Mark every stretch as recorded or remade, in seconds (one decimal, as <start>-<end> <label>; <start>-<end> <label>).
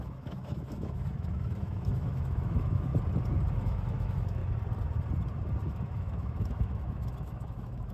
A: 0.0-2.9 remade; 2.9-3.5 recorded; 3.5-4.4 remade; 4.4-5.7 recorded; 5.7-7.9 remade